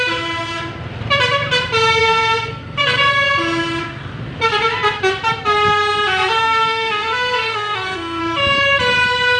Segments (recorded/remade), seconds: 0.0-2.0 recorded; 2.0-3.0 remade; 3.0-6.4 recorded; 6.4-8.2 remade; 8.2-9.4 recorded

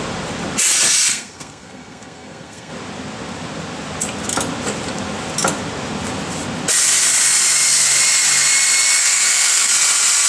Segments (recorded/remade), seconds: 0.0-1.1 recorded; 1.1-2.7 remade; 2.7-9.0 recorded; 9.0-9.7 remade; 9.7-10.3 recorded

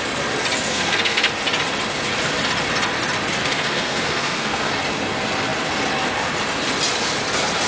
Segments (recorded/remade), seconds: 0.0-0.7 recorded; 0.7-1.3 remade; 1.3-3.4 recorded; 3.4-4.7 remade; 4.7-7.7 recorded

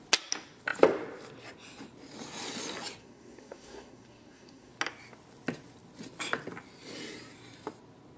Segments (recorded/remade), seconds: 0.0-3.0 recorded; 3.0-4.7 remade; 4.7-8.2 recorded

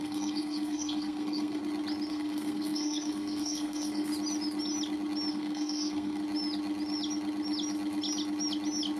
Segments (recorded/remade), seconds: 0.0-1.6 remade; 1.6-2.1 recorded; 2.1-4.1 remade; 4.1-5.3 recorded; 5.3-6.2 remade; 6.2-9.0 recorded

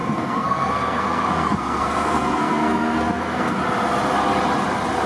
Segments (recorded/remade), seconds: 0.0-3.6 remade; 3.6-5.1 recorded

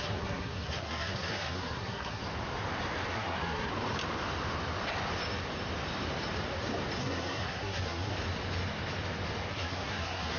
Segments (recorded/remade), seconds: 0.0-2.2 remade; 2.2-3.1 recorded; 3.1-3.7 remade; 3.7-7.0 recorded; 7.0-8.1 remade; 8.1-9.5 recorded; 9.5-10.4 remade

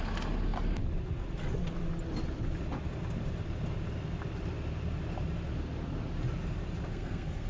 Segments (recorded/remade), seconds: 0.0-6.9 recorded; 6.9-7.5 remade